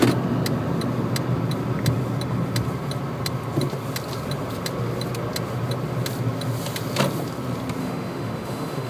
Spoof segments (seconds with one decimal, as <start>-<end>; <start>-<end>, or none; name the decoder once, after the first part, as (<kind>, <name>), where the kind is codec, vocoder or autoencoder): 7.8-8.9 (autoencoder, DAC-VAE)